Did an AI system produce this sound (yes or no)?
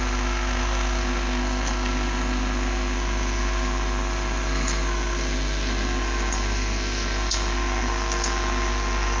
yes